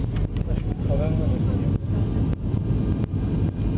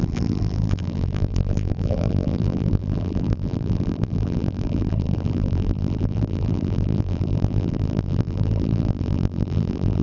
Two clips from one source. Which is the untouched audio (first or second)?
first